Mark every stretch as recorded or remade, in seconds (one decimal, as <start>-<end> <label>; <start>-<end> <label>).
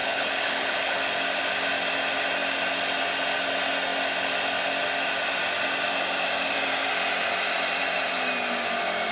0.0-1.0 remade; 1.0-9.1 recorded